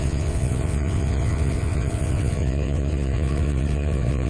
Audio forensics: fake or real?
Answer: fake